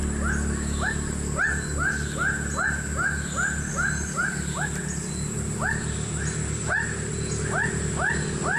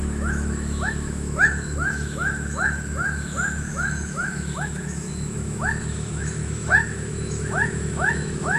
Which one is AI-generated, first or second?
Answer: second